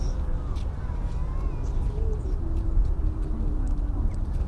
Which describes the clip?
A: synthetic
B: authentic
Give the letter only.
B